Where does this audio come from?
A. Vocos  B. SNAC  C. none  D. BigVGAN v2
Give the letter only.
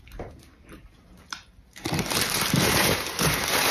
D